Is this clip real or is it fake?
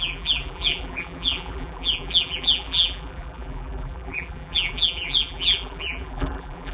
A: fake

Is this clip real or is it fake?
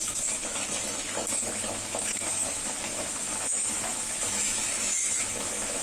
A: fake